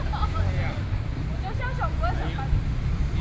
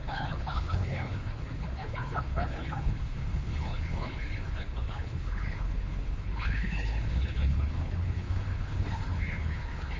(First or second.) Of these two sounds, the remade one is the second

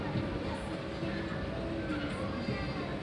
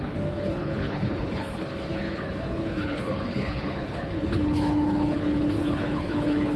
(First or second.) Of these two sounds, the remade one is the second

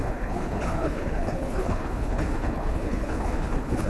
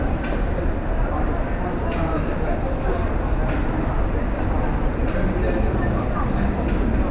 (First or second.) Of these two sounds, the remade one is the first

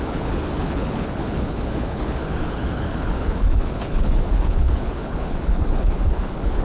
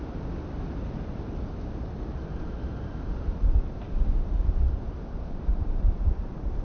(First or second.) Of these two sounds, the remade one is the first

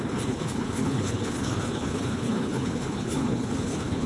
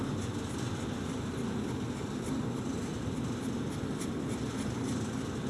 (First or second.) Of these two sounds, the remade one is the first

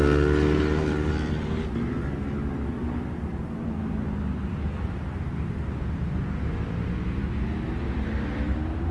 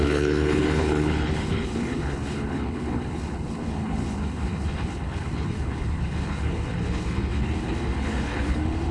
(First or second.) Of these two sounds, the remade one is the second